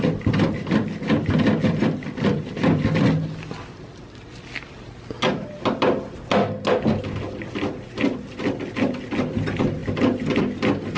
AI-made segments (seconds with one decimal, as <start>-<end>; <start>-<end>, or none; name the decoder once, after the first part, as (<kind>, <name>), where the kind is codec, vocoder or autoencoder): none